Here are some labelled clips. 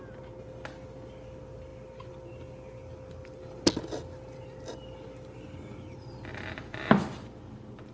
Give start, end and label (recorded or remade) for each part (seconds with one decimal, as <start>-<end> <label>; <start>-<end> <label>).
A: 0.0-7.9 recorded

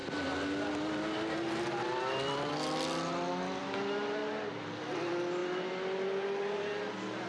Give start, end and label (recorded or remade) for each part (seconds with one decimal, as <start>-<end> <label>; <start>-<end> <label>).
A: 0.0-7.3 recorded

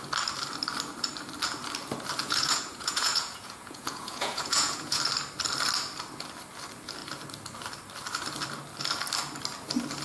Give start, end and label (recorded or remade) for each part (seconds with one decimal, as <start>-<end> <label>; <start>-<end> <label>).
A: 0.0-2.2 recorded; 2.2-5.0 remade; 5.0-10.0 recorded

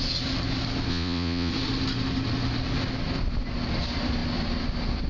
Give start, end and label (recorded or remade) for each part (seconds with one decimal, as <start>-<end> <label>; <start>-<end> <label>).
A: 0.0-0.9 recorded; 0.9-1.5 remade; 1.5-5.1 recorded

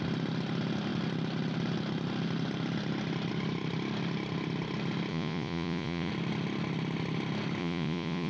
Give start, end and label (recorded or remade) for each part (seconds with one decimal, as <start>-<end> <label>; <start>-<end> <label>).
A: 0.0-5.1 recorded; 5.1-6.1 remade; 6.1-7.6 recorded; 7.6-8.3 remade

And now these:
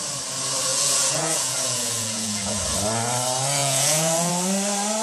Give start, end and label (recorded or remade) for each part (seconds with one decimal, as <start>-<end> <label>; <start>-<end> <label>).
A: 0.0-0.7 recorded; 0.7-2.6 remade; 2.6-3.6 recorded; 3.6-4.3 remade; 4.3-5.0 recorded